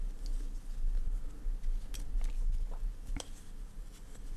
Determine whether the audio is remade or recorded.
recorded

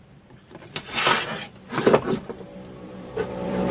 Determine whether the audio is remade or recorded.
remade